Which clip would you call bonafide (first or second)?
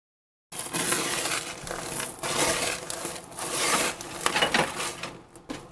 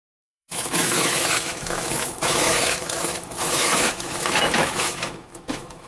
first